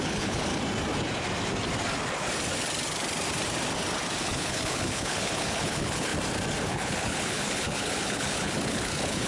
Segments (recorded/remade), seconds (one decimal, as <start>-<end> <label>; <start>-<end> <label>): 0.0-0.5 remade; 0.5-4.2 recorded; 4.2-6.1 remade; 6.1-6.7 recorded; 6.7-9.3 remade